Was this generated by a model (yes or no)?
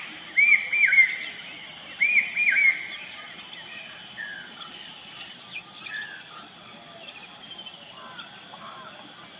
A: no